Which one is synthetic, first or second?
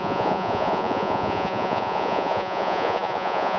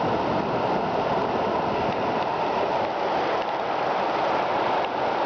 first